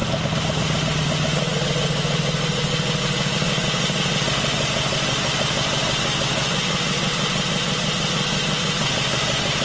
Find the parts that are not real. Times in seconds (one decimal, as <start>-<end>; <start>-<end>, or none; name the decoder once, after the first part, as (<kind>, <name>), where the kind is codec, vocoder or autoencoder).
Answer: none